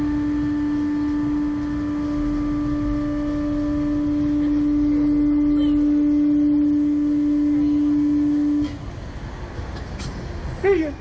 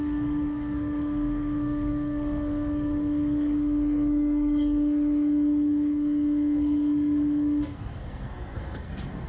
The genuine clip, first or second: first